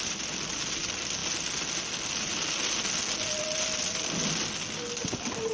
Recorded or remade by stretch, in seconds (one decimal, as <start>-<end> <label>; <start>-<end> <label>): 0.0-5.5 recorded